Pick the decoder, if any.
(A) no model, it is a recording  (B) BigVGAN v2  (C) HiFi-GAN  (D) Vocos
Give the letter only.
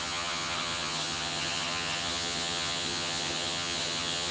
C